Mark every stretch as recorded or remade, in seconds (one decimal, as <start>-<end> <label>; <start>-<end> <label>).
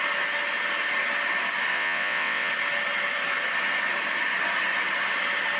0.0-1.7 recorded; 1.7-2.5 remade; 2.5-5.6 recorded